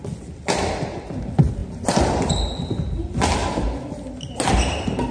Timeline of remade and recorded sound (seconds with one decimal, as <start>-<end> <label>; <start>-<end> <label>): 0.0-5.1 recorded